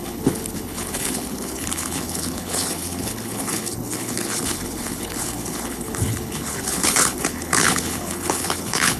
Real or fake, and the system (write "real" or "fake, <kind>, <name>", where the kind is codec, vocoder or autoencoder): fake, codec, HILCodec